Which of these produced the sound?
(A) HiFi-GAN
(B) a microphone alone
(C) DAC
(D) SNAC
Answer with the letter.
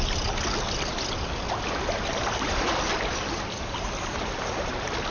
B